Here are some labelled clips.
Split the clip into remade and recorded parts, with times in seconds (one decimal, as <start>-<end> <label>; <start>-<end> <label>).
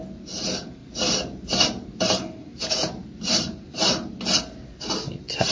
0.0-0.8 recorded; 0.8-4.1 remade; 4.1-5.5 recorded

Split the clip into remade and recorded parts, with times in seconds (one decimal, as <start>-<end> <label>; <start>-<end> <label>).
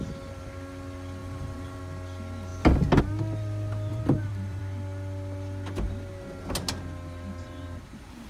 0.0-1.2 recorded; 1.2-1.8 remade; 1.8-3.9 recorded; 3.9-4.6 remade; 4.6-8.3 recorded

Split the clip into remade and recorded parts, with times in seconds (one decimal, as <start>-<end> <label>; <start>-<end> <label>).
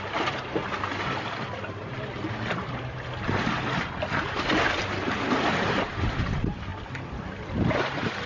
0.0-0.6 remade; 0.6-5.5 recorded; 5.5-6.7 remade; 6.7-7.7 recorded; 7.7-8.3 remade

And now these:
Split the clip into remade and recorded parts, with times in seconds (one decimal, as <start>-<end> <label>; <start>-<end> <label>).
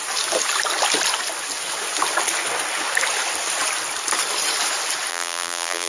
0.0-5.1 recorded; 5.1-5.9 remade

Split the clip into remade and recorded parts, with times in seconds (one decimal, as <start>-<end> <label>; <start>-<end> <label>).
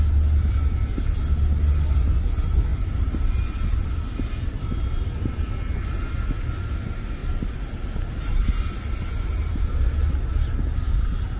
0.0-2.7 recorded; 2.7-5.5 remade; 5.5-7.2 recorded; 7.2-10.3 remade; 10.3-11.4 recorded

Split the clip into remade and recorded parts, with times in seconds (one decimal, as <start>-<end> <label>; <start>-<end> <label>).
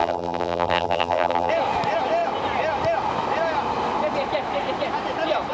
0.0-1.5 remade; 1.5-5.5 recorded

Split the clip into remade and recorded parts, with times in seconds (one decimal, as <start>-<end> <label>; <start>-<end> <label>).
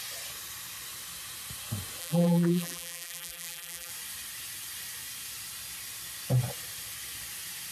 0.0-2.0 recorded; 2.0-3.9 remade; 3.9-7.7 recorded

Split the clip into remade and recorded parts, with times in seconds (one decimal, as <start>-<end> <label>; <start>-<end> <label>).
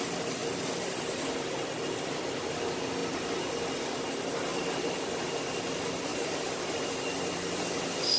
0.0-4.5 recorded; 4.5-5.0 remade; 5.0-6.1 recorded; 6.1-6.8 remade; 6.8-8.2 recorded